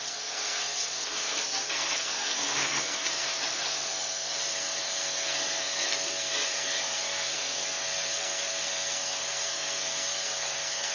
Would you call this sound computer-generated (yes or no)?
yes